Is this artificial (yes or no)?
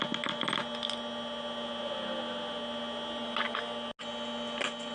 no